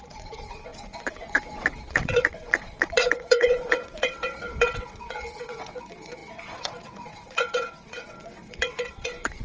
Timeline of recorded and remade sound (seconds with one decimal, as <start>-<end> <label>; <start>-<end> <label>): 0.0-9.4 remade